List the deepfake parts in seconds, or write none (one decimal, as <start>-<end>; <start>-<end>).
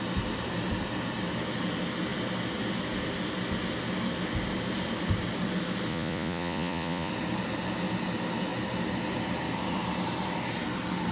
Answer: 5.9-7.1